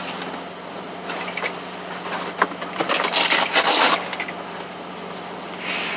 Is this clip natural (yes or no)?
yes